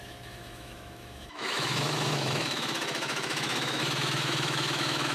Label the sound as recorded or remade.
remade